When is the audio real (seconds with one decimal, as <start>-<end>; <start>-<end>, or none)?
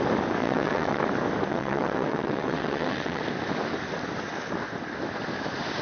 0.0-0.4; 1.0-1.5; 3.2-5.8